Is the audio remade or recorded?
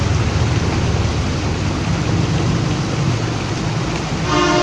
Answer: recorded